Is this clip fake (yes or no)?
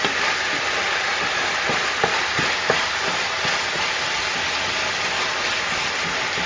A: no